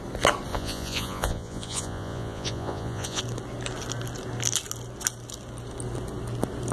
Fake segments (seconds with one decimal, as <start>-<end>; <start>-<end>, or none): 0.5-3.2